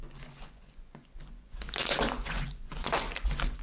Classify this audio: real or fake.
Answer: fake